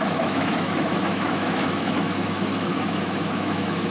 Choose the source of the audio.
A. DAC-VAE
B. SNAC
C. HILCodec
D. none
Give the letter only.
A